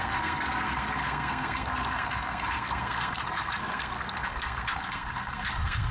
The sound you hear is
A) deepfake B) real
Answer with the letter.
A